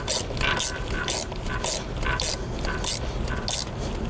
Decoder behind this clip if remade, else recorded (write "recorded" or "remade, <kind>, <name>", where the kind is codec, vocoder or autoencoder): recorded